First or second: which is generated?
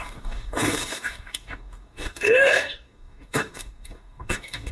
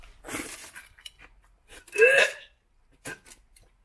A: first